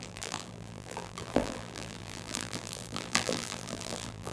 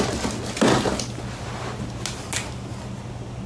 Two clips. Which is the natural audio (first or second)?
second